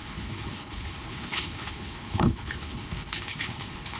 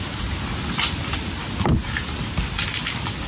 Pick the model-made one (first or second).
first